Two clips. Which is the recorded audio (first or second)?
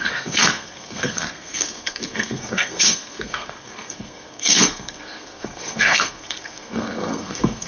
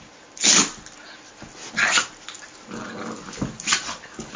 second